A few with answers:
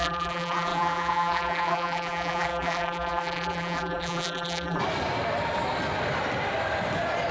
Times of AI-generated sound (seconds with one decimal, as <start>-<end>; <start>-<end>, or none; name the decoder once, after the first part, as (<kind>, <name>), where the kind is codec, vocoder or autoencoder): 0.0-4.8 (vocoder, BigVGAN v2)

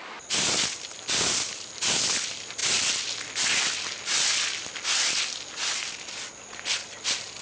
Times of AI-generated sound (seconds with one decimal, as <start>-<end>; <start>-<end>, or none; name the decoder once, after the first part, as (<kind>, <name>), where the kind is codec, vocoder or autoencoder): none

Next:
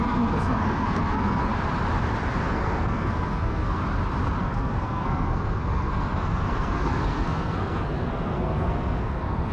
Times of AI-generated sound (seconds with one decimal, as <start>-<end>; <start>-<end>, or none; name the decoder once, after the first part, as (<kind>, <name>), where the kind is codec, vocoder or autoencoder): 0.0-1.5 (codec, SNAC); 2.4-3.8; 4.4-9.5

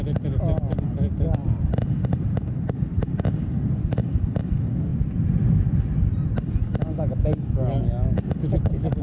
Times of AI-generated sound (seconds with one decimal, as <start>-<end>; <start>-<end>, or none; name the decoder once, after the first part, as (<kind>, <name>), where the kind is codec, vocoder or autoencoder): 1.4-4.4 (vocoder, BigVGAN v2)